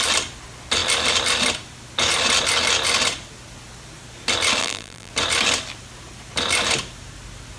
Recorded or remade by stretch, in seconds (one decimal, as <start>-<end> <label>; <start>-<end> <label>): 0.0-4.6 recorded; 4.6-5.1 remade; 5.1-7.6 recorded